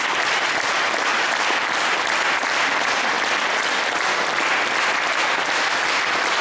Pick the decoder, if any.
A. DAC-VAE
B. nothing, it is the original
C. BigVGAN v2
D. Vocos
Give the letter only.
B